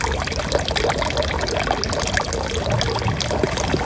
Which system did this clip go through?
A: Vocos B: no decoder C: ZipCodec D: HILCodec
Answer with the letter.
B